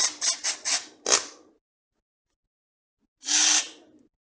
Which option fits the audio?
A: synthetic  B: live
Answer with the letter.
B